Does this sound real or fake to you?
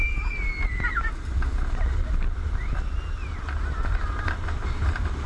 real